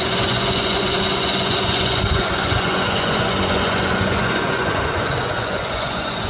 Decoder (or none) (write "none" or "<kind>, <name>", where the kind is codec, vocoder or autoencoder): vocoder, Vocos